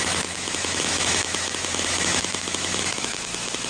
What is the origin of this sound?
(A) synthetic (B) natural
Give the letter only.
A